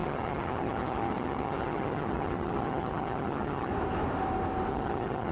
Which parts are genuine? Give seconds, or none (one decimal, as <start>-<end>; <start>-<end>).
3.7-4.7